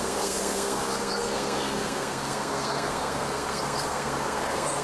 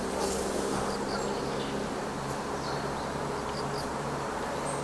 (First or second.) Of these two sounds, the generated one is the first